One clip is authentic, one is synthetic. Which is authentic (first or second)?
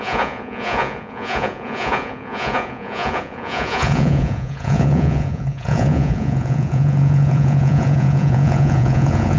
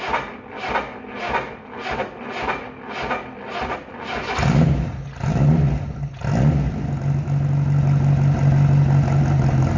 second